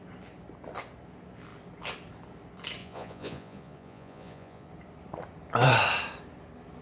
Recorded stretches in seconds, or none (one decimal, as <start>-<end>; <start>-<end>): 0.0-2.8; 4.7-6.8